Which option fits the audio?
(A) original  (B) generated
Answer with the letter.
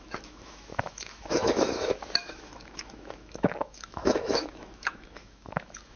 B